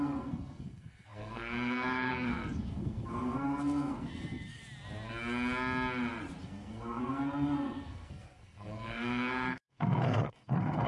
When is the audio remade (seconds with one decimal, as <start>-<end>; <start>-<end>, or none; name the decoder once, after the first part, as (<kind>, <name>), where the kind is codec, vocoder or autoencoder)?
0.0-4.6 (codec, SNAC); 6.4-10.9